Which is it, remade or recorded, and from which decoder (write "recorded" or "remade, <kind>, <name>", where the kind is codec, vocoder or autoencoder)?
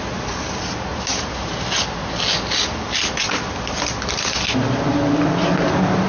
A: recorded